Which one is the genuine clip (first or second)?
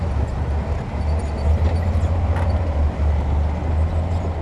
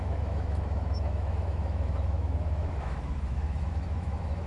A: first